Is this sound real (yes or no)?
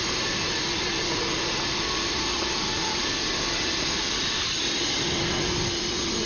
yes